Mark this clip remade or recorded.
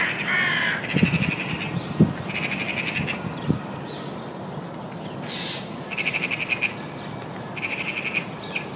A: recorded